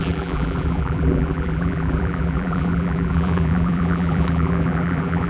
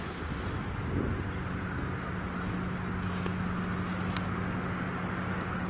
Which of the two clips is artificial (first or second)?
first